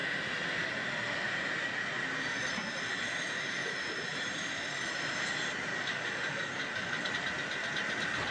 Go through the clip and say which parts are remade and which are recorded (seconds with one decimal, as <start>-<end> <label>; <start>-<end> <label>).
0.0-5.7 recorded; 5.7-7.1 remade; 7.1-8.3 recorded